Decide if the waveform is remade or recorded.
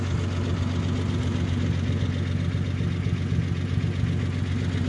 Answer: recorded